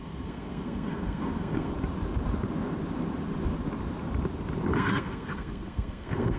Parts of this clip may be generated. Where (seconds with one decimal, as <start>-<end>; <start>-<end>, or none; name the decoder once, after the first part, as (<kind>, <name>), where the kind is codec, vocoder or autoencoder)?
0.0-1.7 (codec, SNAC); 4.7-6.4

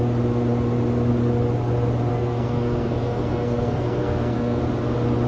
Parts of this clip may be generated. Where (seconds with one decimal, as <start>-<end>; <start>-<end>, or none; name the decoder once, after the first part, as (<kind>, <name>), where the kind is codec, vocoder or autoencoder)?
2.1-4.6 (codec, SNAC)

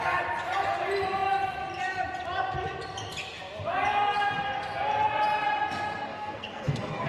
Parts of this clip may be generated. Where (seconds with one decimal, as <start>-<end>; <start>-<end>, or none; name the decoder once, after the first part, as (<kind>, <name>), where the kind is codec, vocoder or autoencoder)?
6.1-7.1 (codec, SNAC)

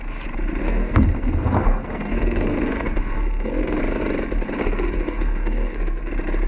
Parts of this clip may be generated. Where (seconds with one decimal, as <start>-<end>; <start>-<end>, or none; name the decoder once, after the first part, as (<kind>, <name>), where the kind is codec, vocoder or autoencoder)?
0.6-3.8 (codec, SNAC); 4.6-6.1

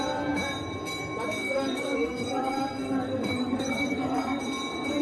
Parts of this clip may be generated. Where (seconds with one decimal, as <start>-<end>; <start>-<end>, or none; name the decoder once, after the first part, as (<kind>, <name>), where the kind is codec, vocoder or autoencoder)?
1.4-4.4 (codec, SNAC)

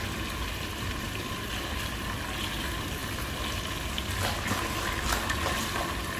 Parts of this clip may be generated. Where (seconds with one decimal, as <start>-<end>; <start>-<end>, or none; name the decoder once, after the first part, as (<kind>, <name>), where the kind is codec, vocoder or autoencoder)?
none

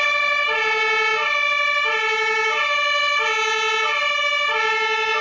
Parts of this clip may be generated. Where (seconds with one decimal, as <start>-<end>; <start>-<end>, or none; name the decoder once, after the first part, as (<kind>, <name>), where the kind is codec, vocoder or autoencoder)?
none